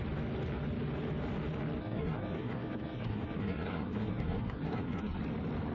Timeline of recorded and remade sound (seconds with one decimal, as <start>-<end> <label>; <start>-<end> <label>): 0.0-1.8 recorded; 1.8-5.2 remade; 5.2-5.7 recorded